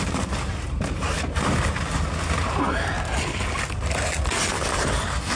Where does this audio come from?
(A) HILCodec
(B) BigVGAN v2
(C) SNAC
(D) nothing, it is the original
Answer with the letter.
D